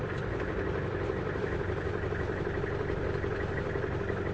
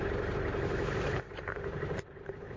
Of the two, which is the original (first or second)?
first